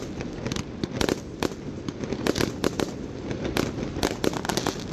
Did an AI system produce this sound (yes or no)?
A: no